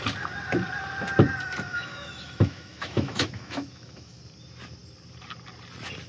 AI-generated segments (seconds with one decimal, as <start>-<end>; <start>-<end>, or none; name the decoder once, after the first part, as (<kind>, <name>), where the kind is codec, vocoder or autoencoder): 1.7-4.2 (autoencoder, DAC-VAE)